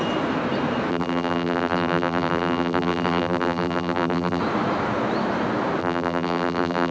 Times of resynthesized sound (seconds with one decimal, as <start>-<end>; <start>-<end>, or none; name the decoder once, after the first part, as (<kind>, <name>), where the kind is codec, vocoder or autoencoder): 0.9-4.4 (vocoder, BigVGAN v2); 5.8-6.9